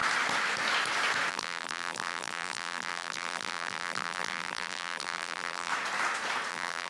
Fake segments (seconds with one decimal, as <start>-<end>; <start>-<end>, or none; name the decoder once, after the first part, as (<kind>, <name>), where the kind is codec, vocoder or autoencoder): 1.3-5.7 (vocoder, BigVGAN v2); 6.5-6.9